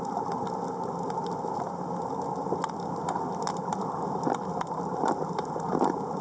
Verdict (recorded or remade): recorded